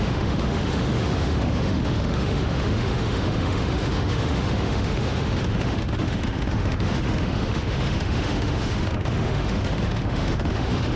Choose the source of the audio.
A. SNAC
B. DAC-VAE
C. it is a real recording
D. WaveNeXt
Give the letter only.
B